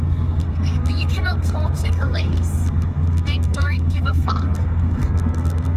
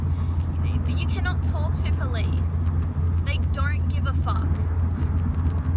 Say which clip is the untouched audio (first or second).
second